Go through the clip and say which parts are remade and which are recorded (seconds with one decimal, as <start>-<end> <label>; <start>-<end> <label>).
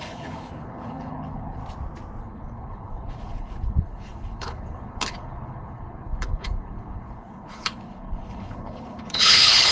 0.0-1.6 remade; 1.6-2.2 recorded; 2.2-9.7 remade